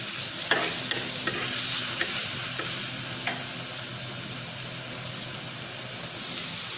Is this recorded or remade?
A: recorded